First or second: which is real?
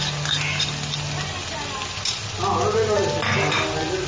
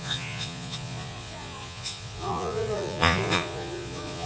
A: first